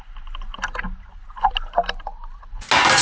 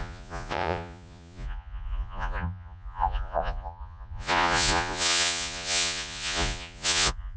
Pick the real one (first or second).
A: first